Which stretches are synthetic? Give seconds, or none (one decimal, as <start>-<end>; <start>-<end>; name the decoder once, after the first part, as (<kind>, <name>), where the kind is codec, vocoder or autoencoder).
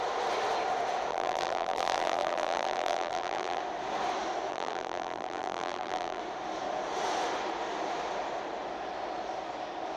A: 1.1-3.6 (vocoder, BigVGAN v2); 4.5-6.2